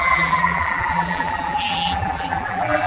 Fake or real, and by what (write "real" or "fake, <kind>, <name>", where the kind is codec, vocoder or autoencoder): fake, vocoder, BigVGAN v2